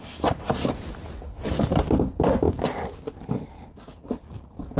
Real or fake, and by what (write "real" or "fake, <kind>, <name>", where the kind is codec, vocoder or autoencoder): real